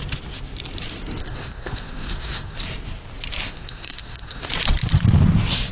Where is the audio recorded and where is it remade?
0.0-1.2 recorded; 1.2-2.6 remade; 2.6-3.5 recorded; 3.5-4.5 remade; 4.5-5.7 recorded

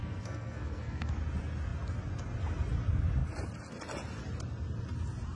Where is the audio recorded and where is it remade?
0.0-1.2 remade; 1.2-5.4 recorded

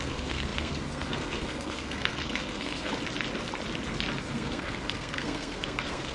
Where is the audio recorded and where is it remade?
0.0-2.9 remade; 2.9-4.2 recorded; 4.2-6.1 remade

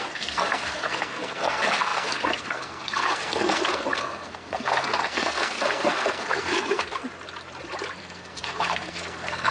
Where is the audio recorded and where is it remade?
0.0-7.0 remade; 7.0-8.0 recorded; 8.0-9.5 remade

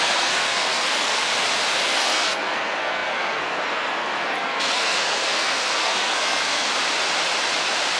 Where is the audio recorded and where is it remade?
0.0-1.3 remade; 1.3-1.8 recorded; 1.8-6.7 remade; 6.7-8.0 recorded

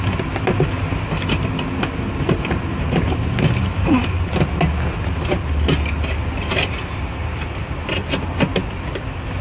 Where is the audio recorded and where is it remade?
0.0-9.4 recorded